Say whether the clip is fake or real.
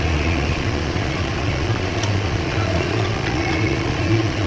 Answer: fake